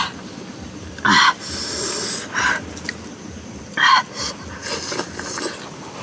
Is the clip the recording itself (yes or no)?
yes